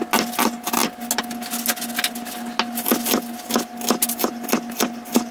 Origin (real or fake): real